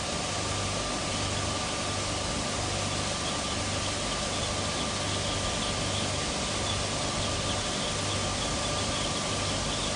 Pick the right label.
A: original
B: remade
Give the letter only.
A